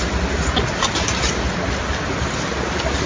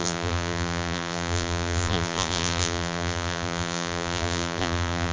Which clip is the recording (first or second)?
first